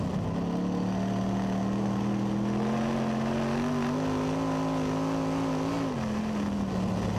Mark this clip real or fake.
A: real